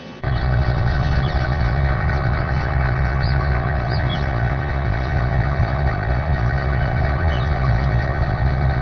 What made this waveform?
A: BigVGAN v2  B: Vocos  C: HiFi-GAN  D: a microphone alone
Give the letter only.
B